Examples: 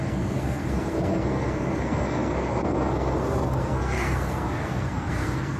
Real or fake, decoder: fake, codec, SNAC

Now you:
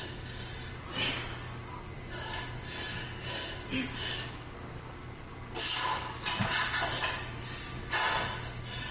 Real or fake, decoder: real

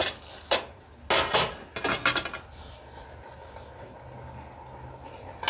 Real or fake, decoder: real